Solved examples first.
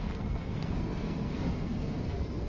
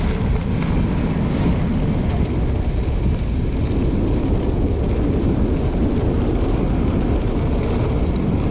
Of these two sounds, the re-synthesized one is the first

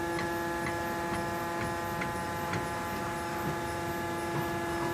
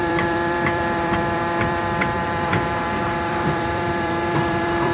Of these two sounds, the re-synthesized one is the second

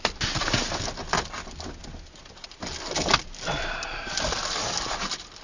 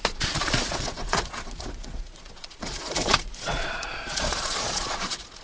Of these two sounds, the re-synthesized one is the second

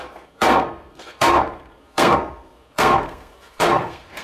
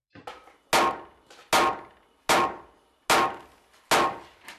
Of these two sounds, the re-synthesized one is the first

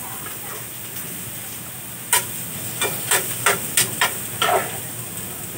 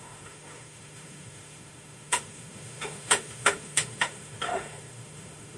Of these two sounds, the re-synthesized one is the second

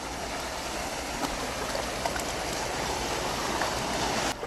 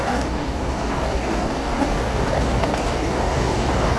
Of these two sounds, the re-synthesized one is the second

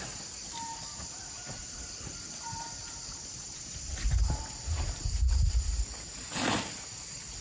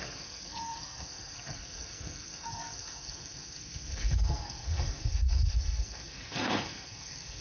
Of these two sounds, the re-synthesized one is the second